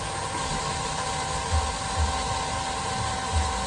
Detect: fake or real real